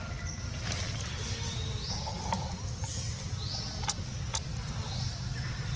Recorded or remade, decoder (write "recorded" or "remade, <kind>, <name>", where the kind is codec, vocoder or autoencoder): recorded